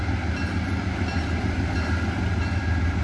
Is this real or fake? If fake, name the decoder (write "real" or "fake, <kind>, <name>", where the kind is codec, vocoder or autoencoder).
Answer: real